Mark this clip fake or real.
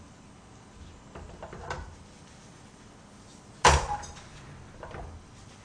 real